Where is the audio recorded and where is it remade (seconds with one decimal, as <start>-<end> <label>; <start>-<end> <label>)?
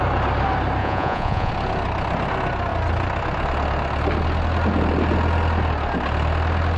0.0-0.8 recorded; 0.8-1.5 remade; 1.5-6.8 recorded